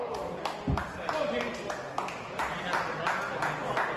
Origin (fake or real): real